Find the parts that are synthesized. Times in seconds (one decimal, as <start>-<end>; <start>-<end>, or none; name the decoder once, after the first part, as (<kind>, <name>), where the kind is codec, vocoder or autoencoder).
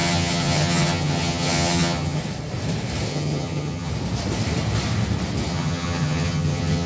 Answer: 0.0-2.2 (vocoder, HiFi-GAN); 3.1-3.9; 5.5-6.9